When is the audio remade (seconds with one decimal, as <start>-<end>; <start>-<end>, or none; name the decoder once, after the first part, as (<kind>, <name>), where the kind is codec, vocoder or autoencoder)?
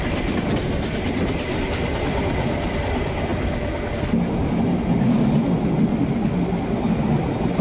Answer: none